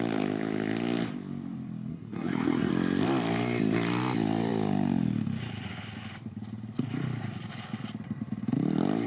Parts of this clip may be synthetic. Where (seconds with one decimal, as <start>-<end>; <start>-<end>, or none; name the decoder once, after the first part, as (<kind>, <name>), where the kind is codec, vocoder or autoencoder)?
1.9-2.7 (codec, SNAC)